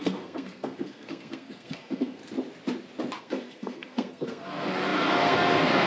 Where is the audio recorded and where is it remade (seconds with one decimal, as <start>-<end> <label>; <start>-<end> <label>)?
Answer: 0.0-2.2 remade; 2.2-3.2 recorded; 3.2-5.9 remade